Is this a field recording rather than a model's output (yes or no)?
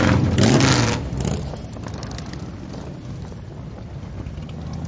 yes